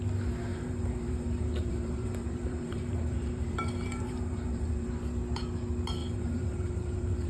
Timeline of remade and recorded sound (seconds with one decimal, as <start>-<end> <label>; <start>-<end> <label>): 0.0-0.5 recorded; 0.5-4.9 remade; 4.9-6.0 recorded; 6.0-7.3 remade